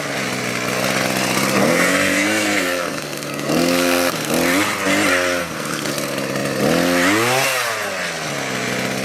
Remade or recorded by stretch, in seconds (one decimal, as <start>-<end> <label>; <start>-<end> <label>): 0.0-1.6 recorded; 1.6-4.3 remade; 4.3-5.4 recorded; 5.4-5.9 remade; 5.9-9.0 recorded